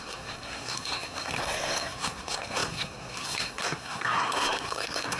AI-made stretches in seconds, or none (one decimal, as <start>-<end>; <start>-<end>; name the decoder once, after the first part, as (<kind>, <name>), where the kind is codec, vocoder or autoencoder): 0.0-5.2 (codec, SNAC)